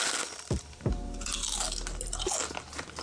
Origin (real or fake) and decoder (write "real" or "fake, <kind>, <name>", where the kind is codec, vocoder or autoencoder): real